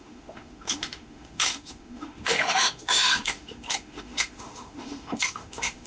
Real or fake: fake